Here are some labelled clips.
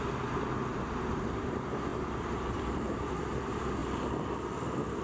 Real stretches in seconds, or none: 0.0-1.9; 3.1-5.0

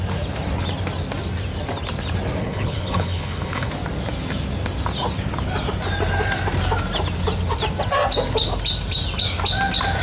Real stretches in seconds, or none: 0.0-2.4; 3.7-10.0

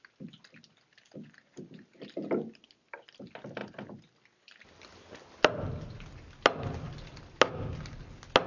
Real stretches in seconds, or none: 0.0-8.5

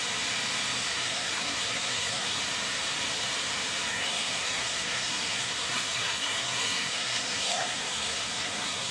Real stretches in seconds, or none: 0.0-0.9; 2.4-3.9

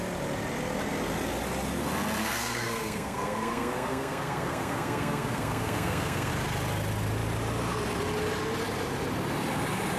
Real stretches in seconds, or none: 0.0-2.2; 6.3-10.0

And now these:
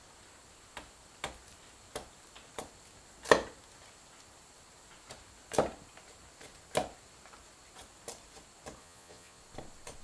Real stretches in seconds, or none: 0.0-8.8; 9.4-10.0